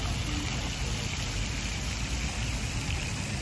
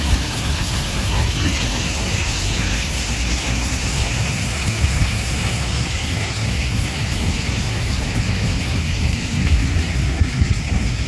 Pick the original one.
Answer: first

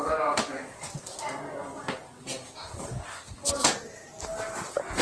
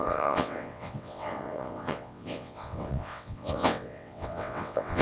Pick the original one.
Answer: first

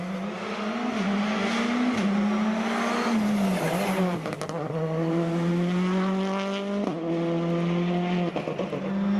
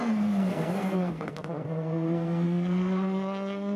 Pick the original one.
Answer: first